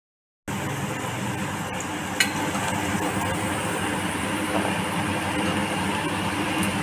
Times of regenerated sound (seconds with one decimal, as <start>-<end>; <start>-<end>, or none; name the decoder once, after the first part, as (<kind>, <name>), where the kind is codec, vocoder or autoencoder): none